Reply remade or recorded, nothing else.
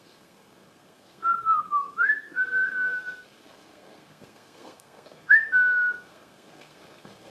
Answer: remade